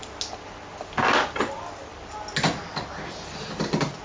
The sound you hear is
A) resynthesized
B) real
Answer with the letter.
B